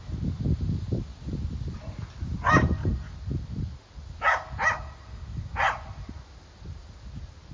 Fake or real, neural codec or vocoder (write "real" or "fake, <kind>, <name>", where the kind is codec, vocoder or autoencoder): real